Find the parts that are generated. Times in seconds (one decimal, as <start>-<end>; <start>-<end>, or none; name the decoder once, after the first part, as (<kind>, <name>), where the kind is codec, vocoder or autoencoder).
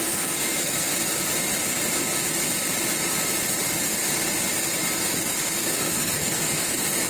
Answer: 0.0-0.9 (codec, SNAC); 5.2-7.1